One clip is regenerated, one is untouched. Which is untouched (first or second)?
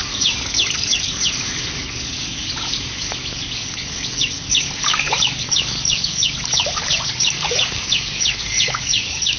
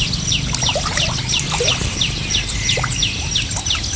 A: second